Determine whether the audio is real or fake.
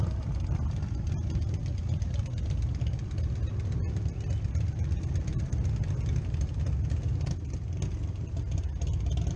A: real